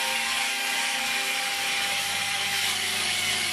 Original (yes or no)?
no